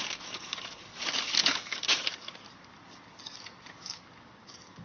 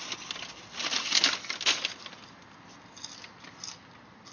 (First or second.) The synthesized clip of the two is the first